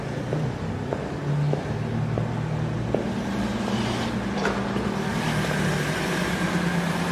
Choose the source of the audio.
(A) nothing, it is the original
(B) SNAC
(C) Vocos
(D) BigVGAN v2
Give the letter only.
A